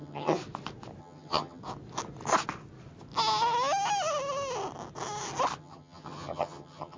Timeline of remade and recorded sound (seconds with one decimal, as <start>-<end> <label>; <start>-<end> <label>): 0.0-0.4 remade; 0.4-1.0 recorded; 1.0-1.6 remade; 1.6-5.6 recorded; 5.6-7.0 remade

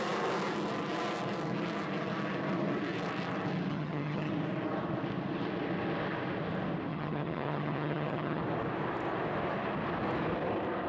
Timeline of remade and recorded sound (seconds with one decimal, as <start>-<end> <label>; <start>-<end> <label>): 0.0-3.7 recorded; 3.7-4.3 remade; 4.3-6.9 recorded; 6.9-8.4 remade; 8.4-10.9 recorded

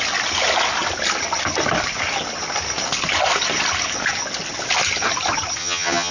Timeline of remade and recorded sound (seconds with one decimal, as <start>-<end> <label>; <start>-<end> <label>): 0.0-5.6 recorded; 5.6-6.1 remade

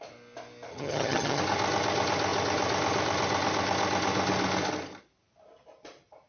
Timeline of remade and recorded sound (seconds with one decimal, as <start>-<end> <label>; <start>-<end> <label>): 0.0-0.7 recorded; 0.7-1.4 remade; 1.4-6.3 recorded

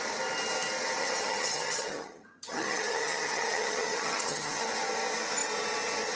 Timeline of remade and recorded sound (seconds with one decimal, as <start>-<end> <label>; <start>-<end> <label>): 0.0-1.0 recorded; 1.0-4.7 remade; 4.7-6.2 recorded

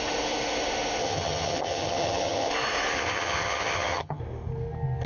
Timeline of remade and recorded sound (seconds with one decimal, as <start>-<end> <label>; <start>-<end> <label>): 0.0-1.0 recorded; 1.0-2.5 remade; 2.5-2.9 recorded; 2.9-4.2 remade; 4.2-5.1 recorded

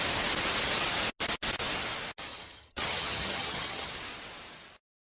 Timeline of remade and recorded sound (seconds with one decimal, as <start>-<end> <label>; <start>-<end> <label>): 0.0-2.3 recorded; 2.3-3.9 remade; 3.9-5.0 recorded